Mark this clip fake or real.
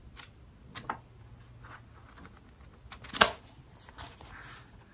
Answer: real